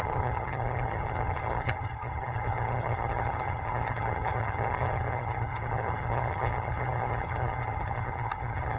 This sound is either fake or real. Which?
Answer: fake